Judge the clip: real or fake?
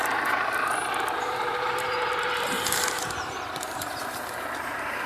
fake